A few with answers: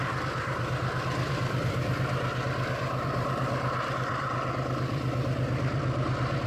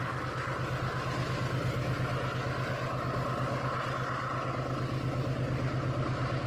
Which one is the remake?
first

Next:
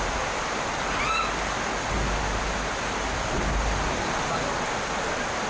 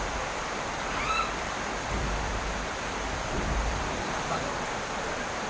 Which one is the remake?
second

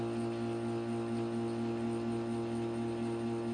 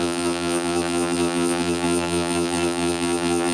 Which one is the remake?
second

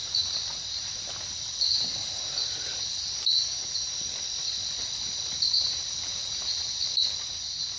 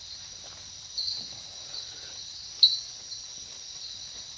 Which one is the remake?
first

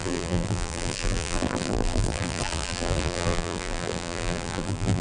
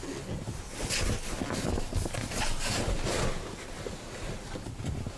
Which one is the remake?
first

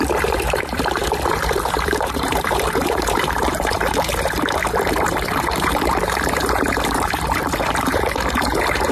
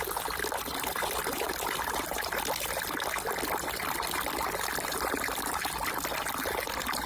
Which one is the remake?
first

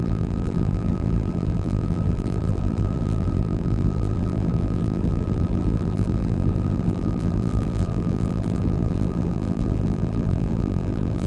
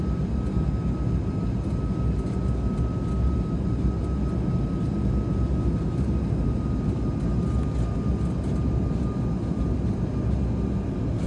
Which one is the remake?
first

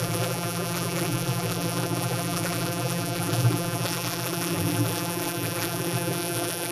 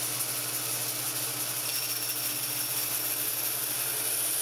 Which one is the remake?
first